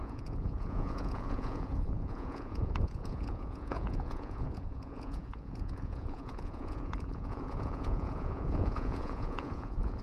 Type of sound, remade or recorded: remade